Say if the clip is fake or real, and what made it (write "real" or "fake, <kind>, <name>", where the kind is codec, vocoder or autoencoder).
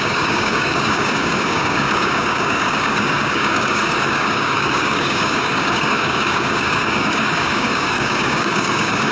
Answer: fake, codec, DAC